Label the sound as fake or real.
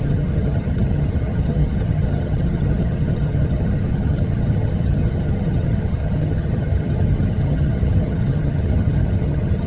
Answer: fake